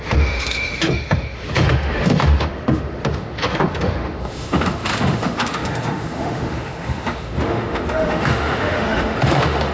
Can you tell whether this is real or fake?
fake